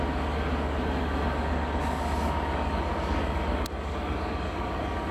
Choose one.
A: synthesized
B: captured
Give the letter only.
A